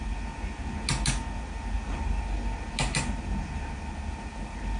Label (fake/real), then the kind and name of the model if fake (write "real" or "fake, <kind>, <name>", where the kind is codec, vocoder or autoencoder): real